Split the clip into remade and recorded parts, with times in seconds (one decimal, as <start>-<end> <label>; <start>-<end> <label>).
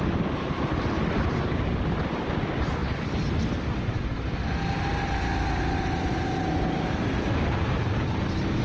0.0-2.8 recorded; 2.8-3.6 remade; 3.6-8.6 recorded